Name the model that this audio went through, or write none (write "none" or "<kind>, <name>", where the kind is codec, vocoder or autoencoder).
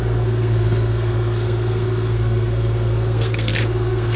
codec, SNAC